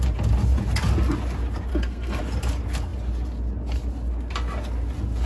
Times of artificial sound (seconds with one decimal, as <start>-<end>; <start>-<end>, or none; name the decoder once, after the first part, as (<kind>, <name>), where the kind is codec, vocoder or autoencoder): 1.7-2.2 (codec, SNAC)